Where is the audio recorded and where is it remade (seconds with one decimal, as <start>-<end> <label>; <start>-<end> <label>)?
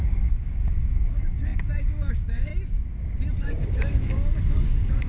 0.0-2.5 remade; 2.5-3.3 recorded; 3.3-5.1 remade